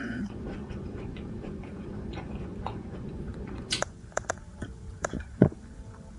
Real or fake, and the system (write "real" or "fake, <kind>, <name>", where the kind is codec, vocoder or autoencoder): fake, vocoder, Vocos